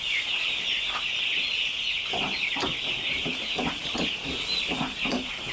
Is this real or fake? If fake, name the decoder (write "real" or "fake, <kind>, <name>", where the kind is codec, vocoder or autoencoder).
real